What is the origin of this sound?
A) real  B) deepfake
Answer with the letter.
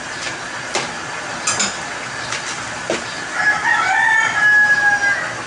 A